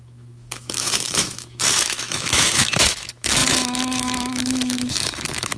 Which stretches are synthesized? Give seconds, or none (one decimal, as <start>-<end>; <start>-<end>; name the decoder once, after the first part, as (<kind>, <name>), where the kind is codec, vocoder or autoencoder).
0.0-5.6 (autoencoder, DAC-VAE)